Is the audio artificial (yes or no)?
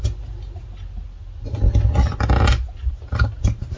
no